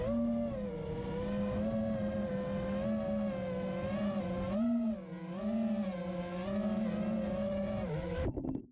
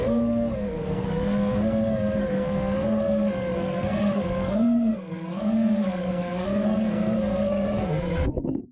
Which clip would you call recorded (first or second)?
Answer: first